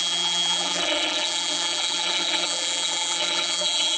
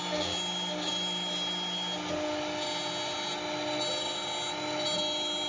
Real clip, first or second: second